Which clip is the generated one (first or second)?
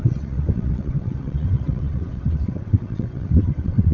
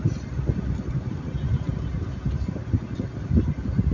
first